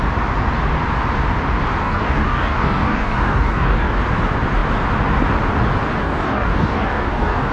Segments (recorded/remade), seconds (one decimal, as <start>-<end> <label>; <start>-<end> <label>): 0.0-1.8 recorded; 1.8-4.0 remade; 4.0-6.0 recorded; 6.0-7.5 remade